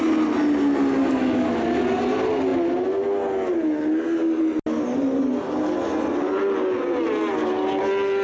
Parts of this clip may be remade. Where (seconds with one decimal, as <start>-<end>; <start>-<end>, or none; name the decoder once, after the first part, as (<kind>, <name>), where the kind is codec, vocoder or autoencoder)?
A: none